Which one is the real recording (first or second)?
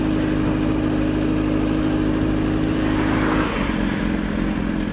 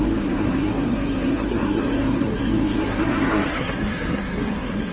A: first